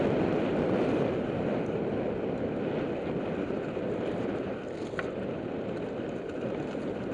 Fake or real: real